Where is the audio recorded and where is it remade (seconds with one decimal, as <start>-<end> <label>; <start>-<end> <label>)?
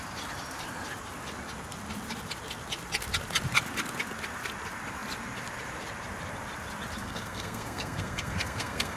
0.0-7.0 recorded; 7.0-9.0 remade